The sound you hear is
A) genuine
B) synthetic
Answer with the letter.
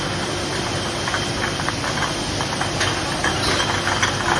A